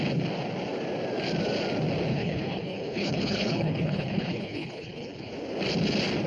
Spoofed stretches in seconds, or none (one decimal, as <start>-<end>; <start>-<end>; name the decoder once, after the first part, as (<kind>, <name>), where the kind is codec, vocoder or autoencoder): 2.1-5.3 (codec, HILCodec)